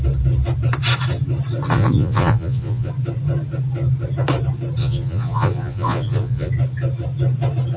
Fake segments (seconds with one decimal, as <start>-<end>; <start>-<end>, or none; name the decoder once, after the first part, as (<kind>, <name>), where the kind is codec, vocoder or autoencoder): 1.7-2.9 (vocoder, Vocos); 4.8-6.5